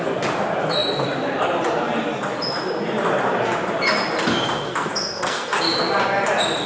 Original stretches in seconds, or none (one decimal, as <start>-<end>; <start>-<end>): 0.0-4.7; 5.6-6.7